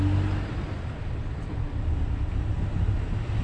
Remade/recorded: recorded